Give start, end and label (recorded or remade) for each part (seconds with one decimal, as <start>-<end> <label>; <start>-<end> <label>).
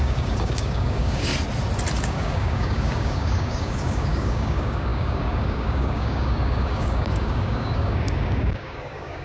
0.0-1.3 remade; 1.3-2.0 recorded; 2.0-9.2 remade